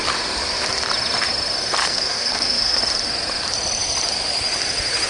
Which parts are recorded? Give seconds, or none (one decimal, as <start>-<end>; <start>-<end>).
0.0-1.8; 2.8-5.1